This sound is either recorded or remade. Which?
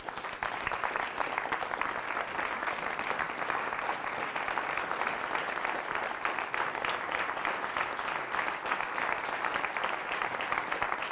recorded